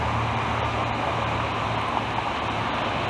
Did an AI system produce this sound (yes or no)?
no